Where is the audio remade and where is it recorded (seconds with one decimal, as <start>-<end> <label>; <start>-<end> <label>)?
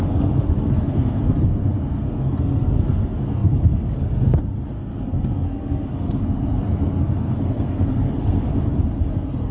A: 0.0-8.5 remade; 8.5-9.1 recorded; 9.1-9.5 remade